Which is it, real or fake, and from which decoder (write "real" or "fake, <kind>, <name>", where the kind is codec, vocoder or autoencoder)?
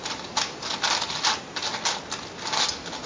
real